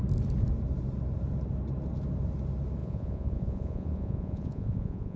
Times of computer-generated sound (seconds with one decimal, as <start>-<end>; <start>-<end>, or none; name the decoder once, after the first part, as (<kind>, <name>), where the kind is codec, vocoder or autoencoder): 2.8-5.2 (vocoder, Vocos)